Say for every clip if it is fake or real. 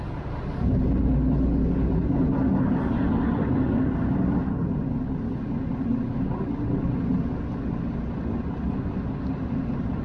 real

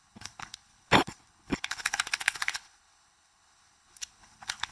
fake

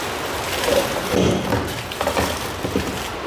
real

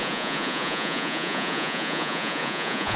fake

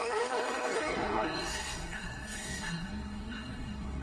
fake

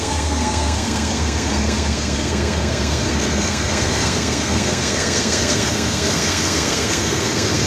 fake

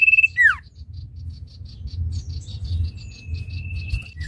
real